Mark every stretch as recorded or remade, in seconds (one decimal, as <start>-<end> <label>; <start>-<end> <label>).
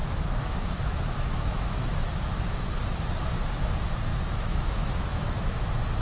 0.0-2.4 remade; 2.4-4.1 recorded; 4.1-5.5 remade; 5.5-6.0 recorded